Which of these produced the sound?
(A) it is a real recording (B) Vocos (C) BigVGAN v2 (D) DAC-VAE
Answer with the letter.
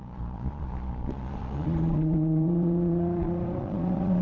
B